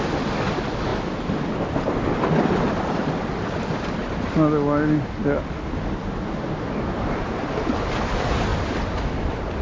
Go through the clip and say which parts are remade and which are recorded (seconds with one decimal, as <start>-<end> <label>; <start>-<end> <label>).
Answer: 0.0-9.6 recorded